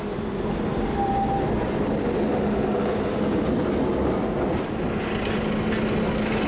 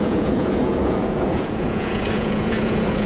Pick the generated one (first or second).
second